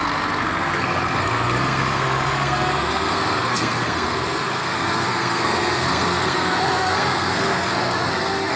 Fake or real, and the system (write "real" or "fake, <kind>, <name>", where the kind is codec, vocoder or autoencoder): fake, codec, SNAC